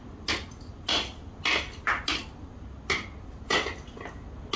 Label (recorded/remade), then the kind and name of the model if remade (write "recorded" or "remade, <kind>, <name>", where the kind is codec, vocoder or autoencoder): recorded